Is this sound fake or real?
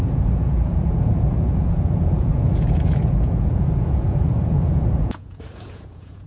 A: fake